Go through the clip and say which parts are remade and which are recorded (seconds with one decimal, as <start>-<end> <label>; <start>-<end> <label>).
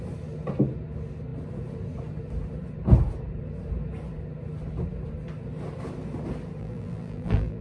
0.0-6.6 recorded; 6.6-7.6 remade